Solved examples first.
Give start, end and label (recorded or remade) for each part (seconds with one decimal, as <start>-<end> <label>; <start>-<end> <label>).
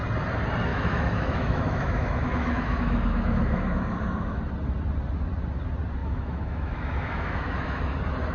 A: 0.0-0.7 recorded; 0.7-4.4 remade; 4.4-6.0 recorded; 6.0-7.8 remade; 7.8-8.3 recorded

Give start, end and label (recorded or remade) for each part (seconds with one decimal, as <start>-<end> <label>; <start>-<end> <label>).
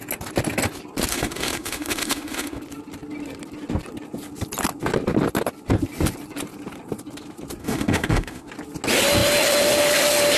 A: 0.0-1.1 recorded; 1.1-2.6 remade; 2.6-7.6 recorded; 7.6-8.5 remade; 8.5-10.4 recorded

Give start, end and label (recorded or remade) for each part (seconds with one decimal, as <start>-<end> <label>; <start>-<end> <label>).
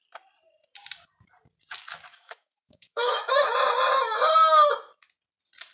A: 0.0-2.1 recorded; 2.1-3.5 remade; 3.5-5.7 recorded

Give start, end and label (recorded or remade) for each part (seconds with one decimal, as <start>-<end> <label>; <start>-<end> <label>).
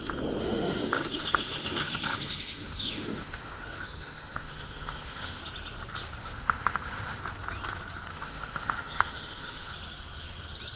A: 0.0-0.4 recorded; 0.4-5.4 remade; 5.4-6.2 recorded; 6.2-7.2 remade; 7.2-8.1 recorded; 8.1-9.7 remade; 9.7-10.8 recorded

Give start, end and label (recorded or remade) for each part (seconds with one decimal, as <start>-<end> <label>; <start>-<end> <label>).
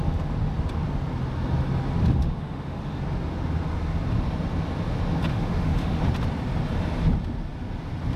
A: 0.0-2.2 recorded; 2.2-3.0 remade; 3.0-5.3 recorded; 5.3-6.0 remade; 6.0-8.2 recorded